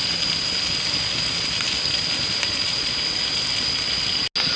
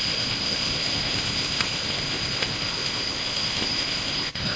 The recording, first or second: first